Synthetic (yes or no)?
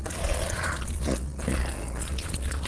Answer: yes